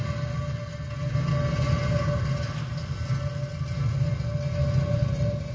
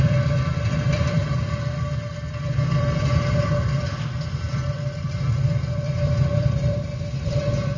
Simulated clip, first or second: second